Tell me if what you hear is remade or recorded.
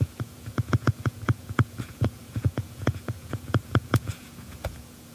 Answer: remade